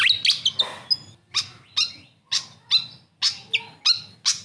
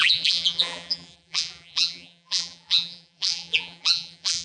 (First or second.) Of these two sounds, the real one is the first